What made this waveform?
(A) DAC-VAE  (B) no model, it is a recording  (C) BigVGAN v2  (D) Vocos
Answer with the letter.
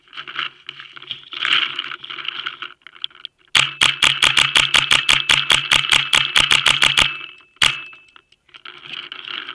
B